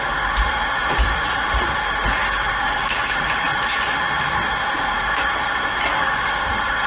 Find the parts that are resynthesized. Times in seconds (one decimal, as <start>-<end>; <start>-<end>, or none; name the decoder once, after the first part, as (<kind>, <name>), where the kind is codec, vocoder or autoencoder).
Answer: 2.2-3.1 (codec, DAC); 5.6-6.5